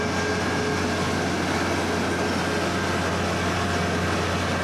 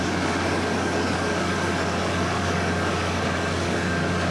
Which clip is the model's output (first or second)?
second